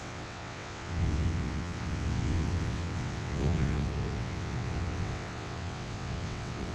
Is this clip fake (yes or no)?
yes